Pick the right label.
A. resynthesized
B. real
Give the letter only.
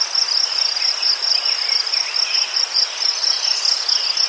B